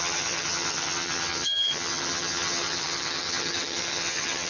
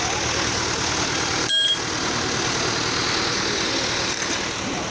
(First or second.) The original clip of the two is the second